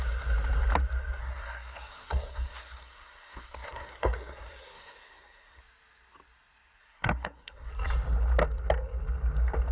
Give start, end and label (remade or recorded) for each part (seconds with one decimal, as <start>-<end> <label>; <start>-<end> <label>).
0.0-1.2 recorded; 1.2-5.6 remade; 5.6-6.8 recorded; 6.8-7.7 remade; 7.7-9.7 recorded